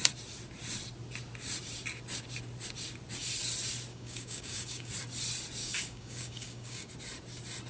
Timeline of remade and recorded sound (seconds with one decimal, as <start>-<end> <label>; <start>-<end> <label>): 0.0-3.9 recorded; 3.9-4.9 remade; 4.9-5.6 recorded; 5.6-6.9 remade; 6.9-7.7 recorded

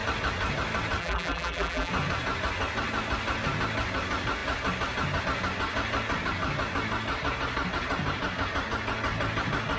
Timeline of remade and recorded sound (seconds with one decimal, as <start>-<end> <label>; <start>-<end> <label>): 0.0-1.0 recorded; 1.0-1.9 remade; 1.9-9.8 recorded

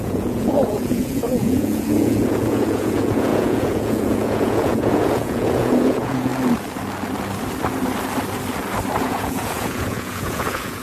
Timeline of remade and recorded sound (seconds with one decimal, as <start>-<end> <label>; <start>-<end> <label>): 0.0-6.3 remade; 6.3-9.0 recorded; 9.0-10.8 remade

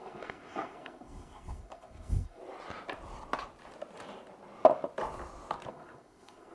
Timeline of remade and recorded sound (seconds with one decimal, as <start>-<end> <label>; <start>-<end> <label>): 0.0-2.4 remade; 2.4-5.7 recorded; 5.7-6.5 remade

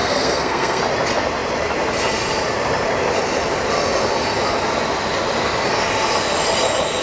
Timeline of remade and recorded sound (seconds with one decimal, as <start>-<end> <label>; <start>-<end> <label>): 0.0-0.8 remade; 0.8-7.0 recorded

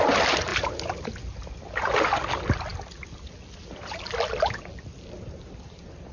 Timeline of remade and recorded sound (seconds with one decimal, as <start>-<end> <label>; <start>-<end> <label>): 0.0-6.1 recorded

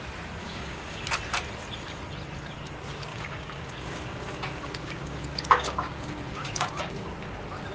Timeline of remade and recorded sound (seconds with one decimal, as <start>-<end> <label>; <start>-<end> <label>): 0.0-0.4 recorded; 0.4-1.0 remade; 1.0-3.1 recorded; 3.1-6.9 remade; 6.9-7.7 recorded

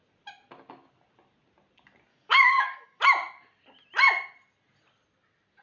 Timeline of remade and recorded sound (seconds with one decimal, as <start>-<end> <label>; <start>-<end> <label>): 0.0-2.1 recorded; 2.1-3.0 remade; 3.0-5.6 recorded